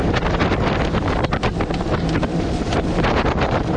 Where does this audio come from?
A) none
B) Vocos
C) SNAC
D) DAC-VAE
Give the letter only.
A